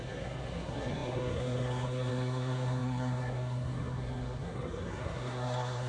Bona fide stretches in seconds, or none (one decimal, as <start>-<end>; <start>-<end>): none